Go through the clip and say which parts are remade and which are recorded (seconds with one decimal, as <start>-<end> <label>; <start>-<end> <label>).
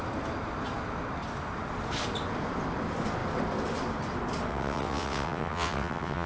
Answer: 0.0-4.5 recorded; 4.5-6.3 remade